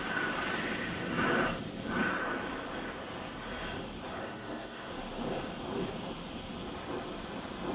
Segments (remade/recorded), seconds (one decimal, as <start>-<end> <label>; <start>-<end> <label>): 0.0-4.2 recorded; 4.2-4.9 remade; 4.9-7.7 recorded